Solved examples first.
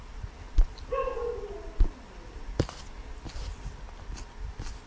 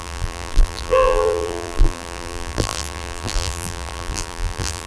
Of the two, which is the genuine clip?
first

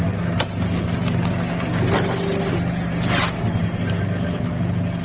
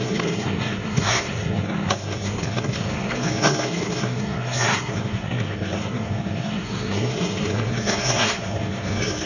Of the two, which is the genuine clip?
first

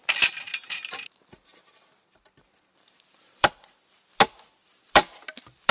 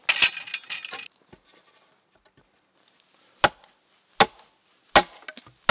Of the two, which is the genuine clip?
second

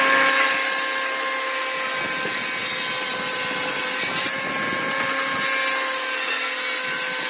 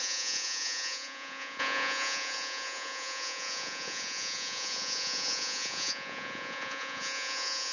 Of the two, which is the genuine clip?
first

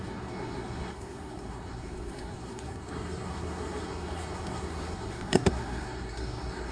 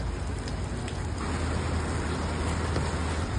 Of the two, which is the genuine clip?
second